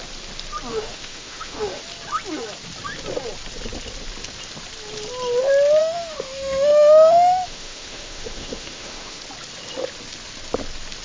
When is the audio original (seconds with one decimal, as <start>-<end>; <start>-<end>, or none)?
0.0-0.7; 1.8-5.8; 9.2-11.0

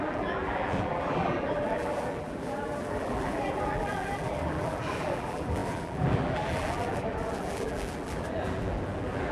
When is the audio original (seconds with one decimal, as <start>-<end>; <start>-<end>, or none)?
none

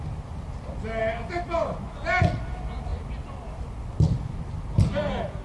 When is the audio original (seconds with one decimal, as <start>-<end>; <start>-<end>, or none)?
0.0-5.4

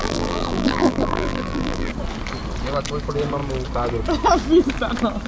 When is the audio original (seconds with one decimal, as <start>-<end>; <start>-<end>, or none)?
1.9-5.3